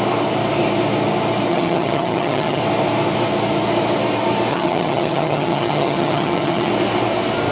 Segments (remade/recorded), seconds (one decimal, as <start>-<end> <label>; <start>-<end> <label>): 0.0-1.5 recorded; 1.5-2.6 remade; 2.6-4.5 recorded; 4.5-6.7 remade; 6.7-7.5 recorded

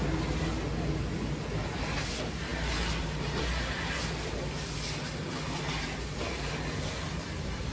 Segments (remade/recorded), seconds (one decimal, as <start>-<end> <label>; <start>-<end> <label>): 0.0-2.1 recorded; 2.1-4.0 remade; 4.0-5.1 recorded; 5.1-7.7 remade